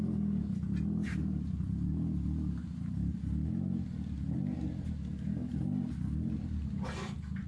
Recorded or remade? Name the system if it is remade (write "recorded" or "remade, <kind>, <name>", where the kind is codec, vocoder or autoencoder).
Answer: recorded